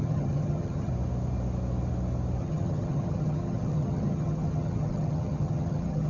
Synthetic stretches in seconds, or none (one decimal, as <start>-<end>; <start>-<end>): 0.0-0.9; 2.4-6.1